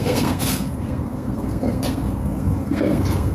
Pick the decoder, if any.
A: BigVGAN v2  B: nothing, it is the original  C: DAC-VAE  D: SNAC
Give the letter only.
D